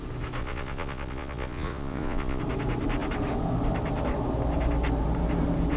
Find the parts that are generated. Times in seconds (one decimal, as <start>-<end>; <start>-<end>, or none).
0.4-2.4